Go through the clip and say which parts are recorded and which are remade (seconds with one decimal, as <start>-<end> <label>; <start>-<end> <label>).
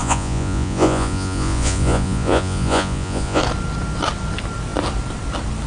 0.0-3.4 remade; 3.4-5.7 recorded